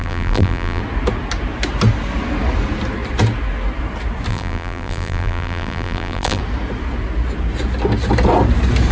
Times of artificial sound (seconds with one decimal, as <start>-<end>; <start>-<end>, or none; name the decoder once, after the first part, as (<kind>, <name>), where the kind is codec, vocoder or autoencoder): 0.0-0.8 (vocoder, BigVGAN v2); 4.3-6.4